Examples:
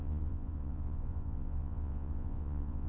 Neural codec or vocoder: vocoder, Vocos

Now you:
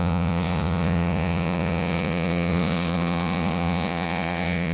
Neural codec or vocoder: vocoder, Vocos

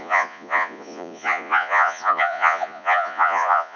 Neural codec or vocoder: vocoder, Vocos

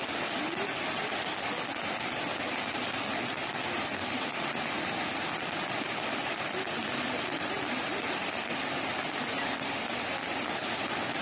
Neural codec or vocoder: none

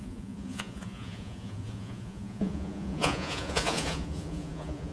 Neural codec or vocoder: vocoder, Vocos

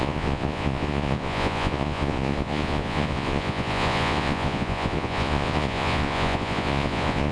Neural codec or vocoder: vocoder, Vocos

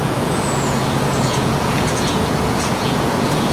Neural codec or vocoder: vocoder, Vocos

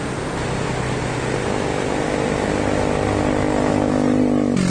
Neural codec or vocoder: none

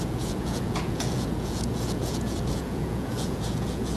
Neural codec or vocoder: vocoder, Vocos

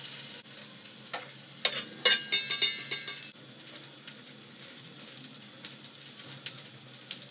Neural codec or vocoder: none